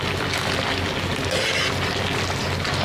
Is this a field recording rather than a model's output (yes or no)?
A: yes